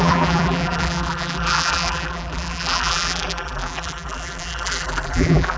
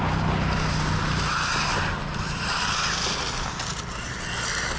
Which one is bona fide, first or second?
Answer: second